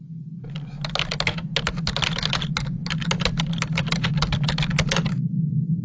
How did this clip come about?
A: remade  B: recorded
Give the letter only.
B